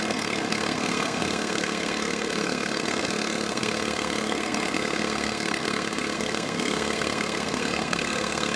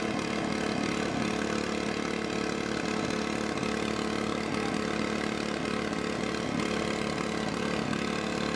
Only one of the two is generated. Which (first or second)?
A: first